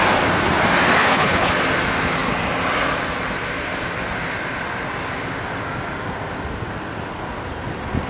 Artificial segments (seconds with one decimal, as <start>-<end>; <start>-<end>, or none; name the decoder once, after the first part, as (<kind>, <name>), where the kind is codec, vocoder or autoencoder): 1.0-1.5 (codec, HILCodec)